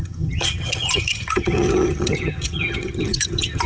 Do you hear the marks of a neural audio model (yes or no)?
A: yes